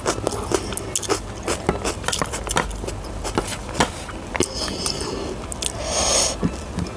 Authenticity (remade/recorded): recorded